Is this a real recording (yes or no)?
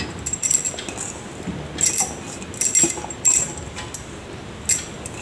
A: yes